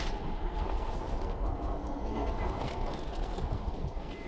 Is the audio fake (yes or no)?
yes